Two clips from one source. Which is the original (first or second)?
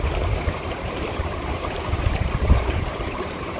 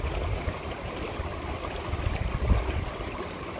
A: second